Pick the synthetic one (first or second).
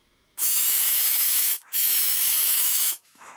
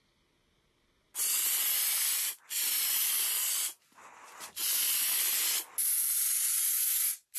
first